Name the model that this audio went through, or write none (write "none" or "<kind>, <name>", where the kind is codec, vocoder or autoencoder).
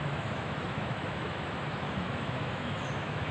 autoencoder, DAC-VAE